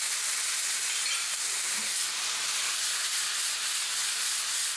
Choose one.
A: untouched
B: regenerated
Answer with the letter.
A